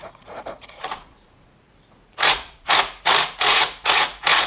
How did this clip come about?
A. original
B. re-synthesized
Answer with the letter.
B